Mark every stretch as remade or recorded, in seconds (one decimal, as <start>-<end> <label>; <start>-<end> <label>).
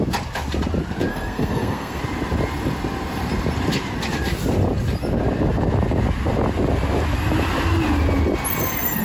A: 0.0-1.1 recorded; 1.1-2.0 remade; 2.0-9.0 recorded